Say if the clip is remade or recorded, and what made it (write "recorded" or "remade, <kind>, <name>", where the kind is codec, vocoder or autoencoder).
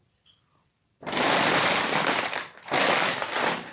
remade, vocoder, BigVGAN v2